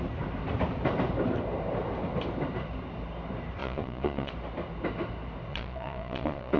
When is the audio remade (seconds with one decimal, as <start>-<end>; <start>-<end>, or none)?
3.6-4.3; 5.5-6.6